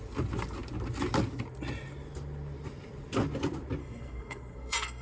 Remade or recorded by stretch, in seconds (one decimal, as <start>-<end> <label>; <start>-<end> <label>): 0.0-3.8 recorded; 3.8-5.0 remade